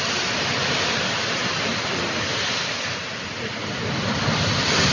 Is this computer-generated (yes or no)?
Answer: no